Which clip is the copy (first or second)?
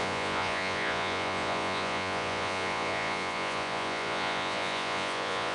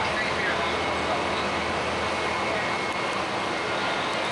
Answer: first